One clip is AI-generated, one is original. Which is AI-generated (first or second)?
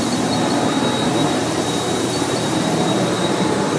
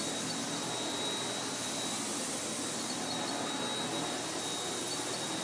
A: first